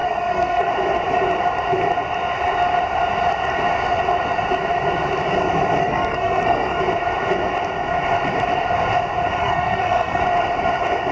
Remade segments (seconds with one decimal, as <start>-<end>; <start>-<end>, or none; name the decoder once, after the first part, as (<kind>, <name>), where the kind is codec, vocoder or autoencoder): 0.0-0.7 (codec, SNAC); 5.8-6.8; 9.4-10.2

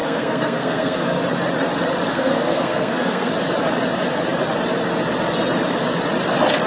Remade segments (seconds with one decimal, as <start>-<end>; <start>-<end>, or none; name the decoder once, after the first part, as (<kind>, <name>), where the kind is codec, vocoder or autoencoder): 0.0-1.2 (codec, SNAC); 2.1-3.3

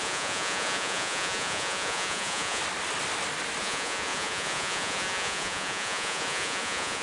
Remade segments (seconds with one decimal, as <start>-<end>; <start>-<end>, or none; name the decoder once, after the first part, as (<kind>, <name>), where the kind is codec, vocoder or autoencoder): 0.0-2.6 (vocoder, Vocos); 3.6-7.0

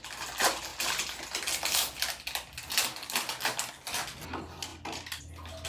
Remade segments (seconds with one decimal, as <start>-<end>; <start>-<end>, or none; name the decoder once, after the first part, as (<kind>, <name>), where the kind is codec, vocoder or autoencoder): none

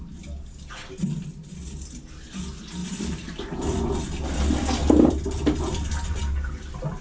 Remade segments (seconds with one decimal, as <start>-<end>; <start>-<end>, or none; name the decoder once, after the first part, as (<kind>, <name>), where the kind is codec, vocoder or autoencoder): 2.8-5.6 (vocoder, BigVGAN v2)

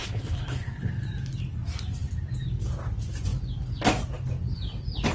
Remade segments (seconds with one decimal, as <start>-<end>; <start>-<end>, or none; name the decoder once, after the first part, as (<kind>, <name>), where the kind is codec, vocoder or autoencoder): 0.0-0.9 (codec, HILCodec)